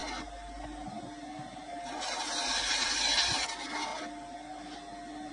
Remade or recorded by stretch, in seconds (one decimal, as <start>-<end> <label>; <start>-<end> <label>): 0.0-5.3 recorded

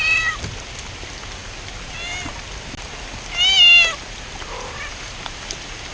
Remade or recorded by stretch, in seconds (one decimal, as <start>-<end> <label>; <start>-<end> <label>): 0.0-1.4 remade; 1.4-4.9 recorded; 4.9-5.9 remade

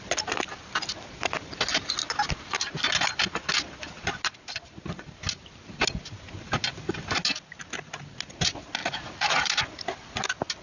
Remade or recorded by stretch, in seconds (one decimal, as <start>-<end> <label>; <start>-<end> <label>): 0.0-8.8 recorded; 8.8-9.5 remade; 9.5-10.6 recorded